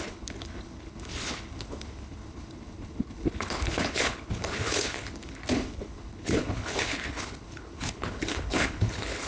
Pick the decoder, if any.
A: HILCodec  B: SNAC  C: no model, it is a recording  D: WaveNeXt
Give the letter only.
A